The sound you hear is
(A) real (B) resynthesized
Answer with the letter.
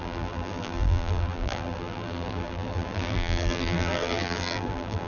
B